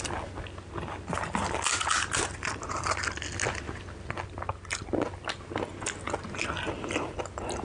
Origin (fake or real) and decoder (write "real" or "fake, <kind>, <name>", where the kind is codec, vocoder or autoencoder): real